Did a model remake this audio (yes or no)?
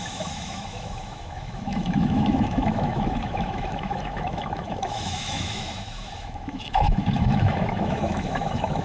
yes